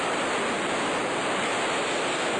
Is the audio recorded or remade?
recorded